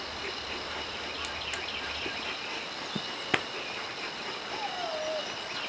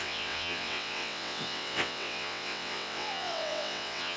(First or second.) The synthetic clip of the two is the second